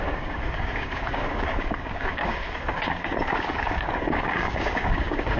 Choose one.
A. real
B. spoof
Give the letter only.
B